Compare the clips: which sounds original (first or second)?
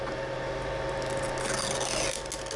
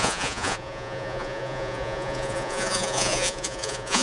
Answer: first